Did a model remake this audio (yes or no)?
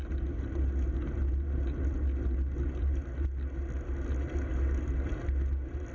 no